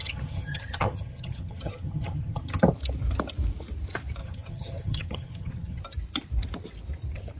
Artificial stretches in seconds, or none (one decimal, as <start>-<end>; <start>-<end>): 0.0-2.6; 4.2-5.8